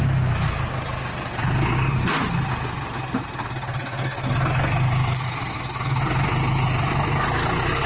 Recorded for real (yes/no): yes